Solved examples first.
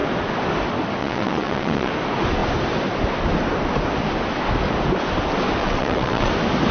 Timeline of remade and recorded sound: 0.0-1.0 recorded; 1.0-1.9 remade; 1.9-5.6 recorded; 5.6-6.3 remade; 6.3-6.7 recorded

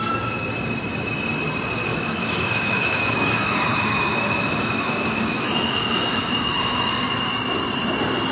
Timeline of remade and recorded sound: 0.0-1.9 recorded; 1.9-6.9 remade; 6.9-8.3 recorded

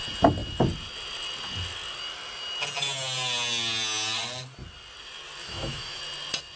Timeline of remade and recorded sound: 0.0-5.4 recorded; 5.4-6.0 remade; 6.0-6.6 recorded